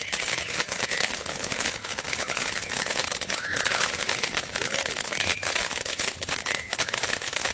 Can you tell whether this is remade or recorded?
remade